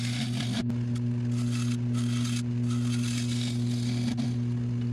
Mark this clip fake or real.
real